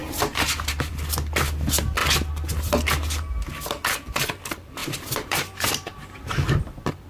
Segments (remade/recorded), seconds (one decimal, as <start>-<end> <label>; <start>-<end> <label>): 0.0-0.9 remade; 0.9-4.8 recorded; 4.8-6.6 remade; 6.6-7.1 recorded